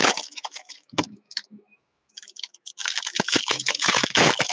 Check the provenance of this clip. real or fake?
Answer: fake